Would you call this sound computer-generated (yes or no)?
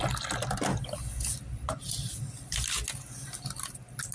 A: no